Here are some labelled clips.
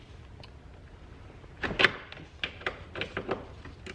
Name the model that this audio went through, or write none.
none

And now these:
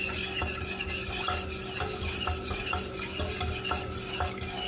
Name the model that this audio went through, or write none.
none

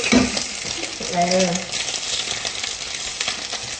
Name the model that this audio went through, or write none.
none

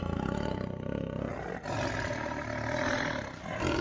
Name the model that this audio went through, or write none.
none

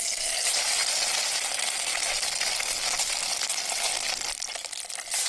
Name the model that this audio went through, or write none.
none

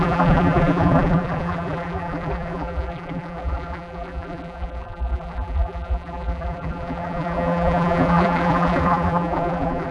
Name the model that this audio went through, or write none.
vocoder, BigVGAN v2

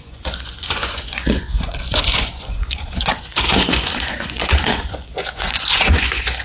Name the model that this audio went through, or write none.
vocoder, Vocos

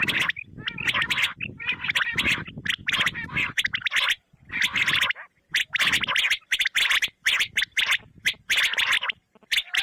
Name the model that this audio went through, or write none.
none